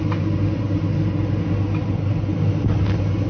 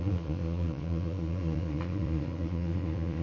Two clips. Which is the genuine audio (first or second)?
first